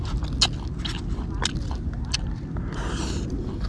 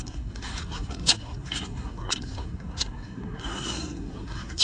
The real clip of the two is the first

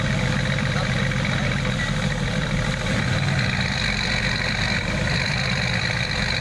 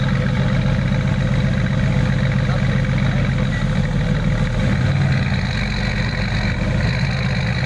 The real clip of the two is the second